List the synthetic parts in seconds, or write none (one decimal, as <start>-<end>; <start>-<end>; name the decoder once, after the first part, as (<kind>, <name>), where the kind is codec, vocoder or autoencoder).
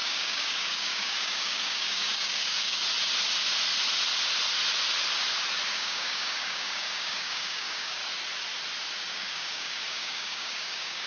0.0-2.8 (codec, DAC); 5.7-8.0; 9.1-11.1